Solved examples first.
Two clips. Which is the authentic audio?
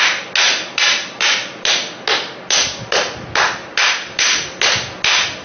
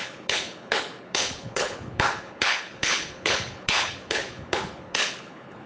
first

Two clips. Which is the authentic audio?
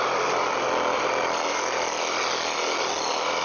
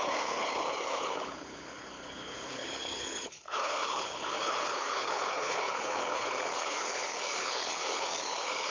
first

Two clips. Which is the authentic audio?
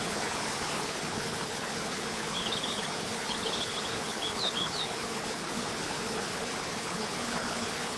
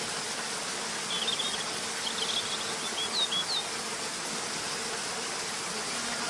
second